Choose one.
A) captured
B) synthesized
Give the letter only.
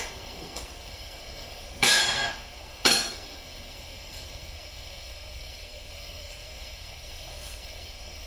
B